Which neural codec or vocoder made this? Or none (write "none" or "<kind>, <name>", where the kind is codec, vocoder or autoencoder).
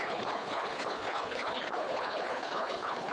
codec, HILCodec